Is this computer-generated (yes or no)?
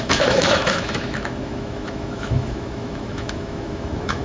yes